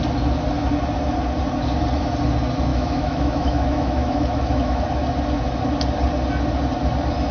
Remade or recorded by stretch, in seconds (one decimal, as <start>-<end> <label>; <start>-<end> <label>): 0.0-2.7 recorded; 2.7-4.8 remade; 4.8-7.3 recorded